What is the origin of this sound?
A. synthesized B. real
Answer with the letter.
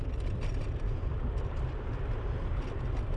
A